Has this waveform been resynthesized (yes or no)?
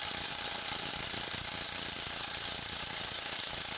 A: no